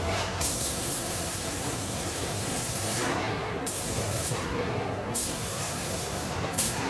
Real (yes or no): no